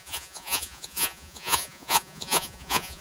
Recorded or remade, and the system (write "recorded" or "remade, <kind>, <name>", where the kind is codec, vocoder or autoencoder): remade, vocoder, Vocos